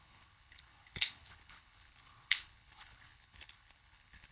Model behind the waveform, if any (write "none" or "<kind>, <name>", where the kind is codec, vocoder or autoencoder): codec, HILCodec